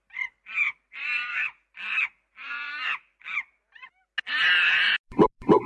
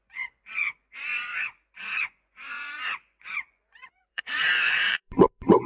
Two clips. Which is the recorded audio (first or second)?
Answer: first